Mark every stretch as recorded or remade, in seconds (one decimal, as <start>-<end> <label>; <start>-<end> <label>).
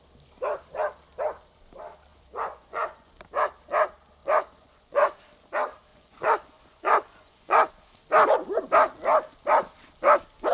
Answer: 0.0-2.1 recorded; 2.1-3.1 remade; 3.1-4.2 recorded; 4.2-5.2 remade; 5.2-5.9 recorded; 5.9-7.7 remade; 7.7-10.5 recorded